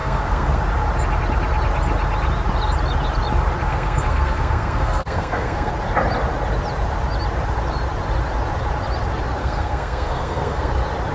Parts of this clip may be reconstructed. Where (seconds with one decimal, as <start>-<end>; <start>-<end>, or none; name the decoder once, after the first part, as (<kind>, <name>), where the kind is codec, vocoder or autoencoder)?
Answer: 0.0-0.6 (codec, SNAC); 3.7-5.7; 9.4-10.7